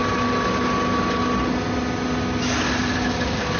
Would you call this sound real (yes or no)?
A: yes